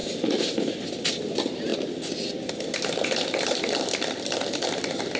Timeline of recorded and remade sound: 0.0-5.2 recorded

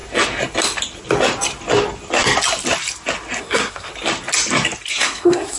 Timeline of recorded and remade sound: 0.0-3.4 recorded; 3.4-3.9 remade; 3.9-4.9 recorded; 4.9-5.6 remade

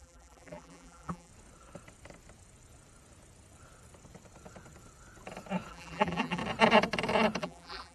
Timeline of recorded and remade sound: 0.0-1.3 remade; 1.3-5.7 recorded; 5.7-6.4 remade; 6.4-7.4 recorded; 7.4-7.9 remade

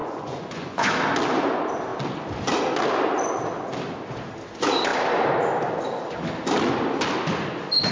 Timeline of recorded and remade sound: 0.0-0.9 remade; 0.9-7.9 recorded

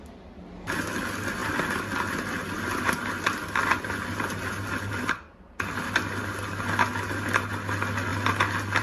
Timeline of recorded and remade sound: 0.0-8.8 recorded

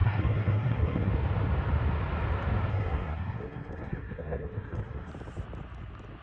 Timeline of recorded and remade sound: 0.0-1.1 remade; 1.1-2.7 recorded; 2.7-5.1 remade; 5.1-6.2 recorded